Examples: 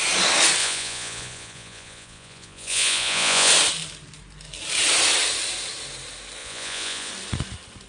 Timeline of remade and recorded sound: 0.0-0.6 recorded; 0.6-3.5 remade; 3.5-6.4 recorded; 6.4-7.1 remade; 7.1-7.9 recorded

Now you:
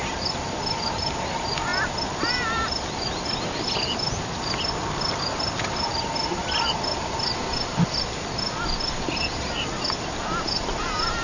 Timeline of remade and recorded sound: 0.0-11.2 recorded

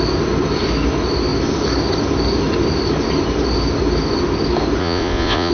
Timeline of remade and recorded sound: 0.0-4.8 recorded; 4.8-5.5 remade